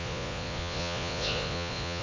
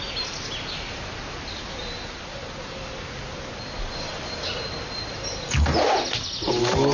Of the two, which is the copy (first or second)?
first